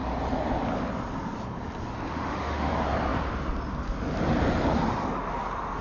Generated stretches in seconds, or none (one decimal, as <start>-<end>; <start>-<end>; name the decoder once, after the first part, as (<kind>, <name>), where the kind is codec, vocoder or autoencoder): 2.1-2.7 (autoencoder, DAC-VAE)